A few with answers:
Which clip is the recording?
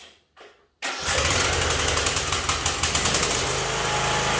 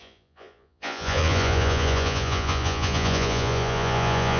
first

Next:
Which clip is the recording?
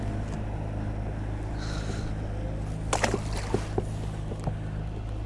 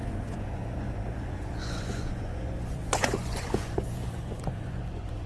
first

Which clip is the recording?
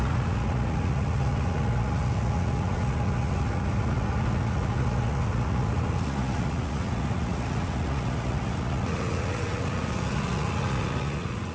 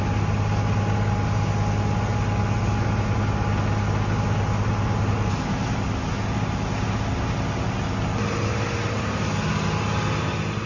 second